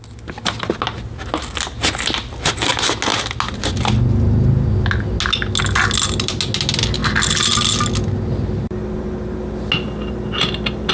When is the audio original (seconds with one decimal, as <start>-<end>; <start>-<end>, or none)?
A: 0.0-10.9